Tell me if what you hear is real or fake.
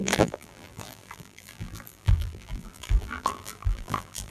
fake